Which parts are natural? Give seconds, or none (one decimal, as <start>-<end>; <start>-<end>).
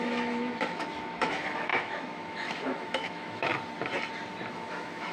3.5-4.5